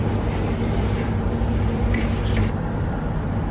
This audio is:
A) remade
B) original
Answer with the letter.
A